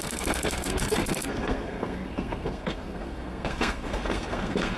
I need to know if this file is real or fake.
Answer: fake